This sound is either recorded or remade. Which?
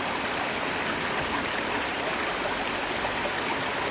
recorded